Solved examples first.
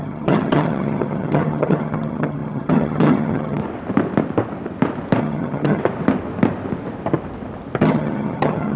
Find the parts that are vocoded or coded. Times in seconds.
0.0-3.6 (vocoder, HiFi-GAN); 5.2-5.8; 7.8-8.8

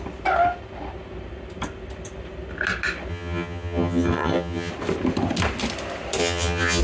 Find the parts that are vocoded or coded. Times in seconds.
3.1-4.7 (vocoder, HiFi-GAN); 6.2-6.8

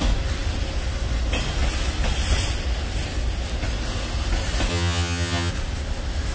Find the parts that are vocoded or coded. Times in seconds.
4.7-5.5 (vocoder, HiFi-GAN)

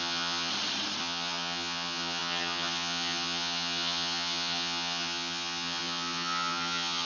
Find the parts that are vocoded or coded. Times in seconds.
0.0-0.5 (vocoder, HiFi-GAN); 1.0-7.0

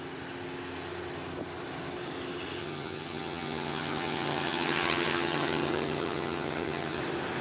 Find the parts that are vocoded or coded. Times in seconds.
2.6-7.0 (vocoder, HiFi-GAN)

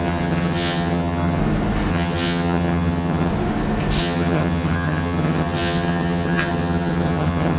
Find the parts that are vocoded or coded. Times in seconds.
0.0-1.4 (vocoder, HiFi-GAN); 1.9-3.3; 4.0-7.6